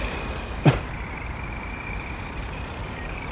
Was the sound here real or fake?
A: fake